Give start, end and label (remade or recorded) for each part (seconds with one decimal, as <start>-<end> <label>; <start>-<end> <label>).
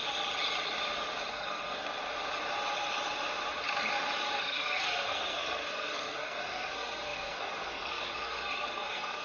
0.0-1.3 recorded; 1.3-2.0 remade; 2.0-4.4 recorded; 4.4-9.2 remade